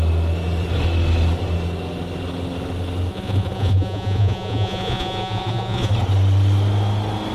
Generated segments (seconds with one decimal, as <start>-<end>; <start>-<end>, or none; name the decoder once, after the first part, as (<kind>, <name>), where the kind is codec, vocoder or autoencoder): 3.1-5.9 (vocoder, Vocos)